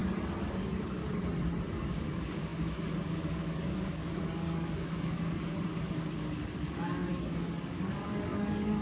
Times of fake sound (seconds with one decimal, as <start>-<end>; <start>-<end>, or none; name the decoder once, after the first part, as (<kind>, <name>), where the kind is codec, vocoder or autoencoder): 0.5-1.0 (codec, DAC); 1.7-8.8